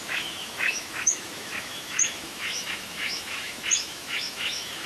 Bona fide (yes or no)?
no